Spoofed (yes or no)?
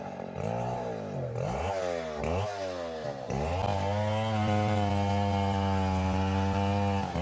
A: no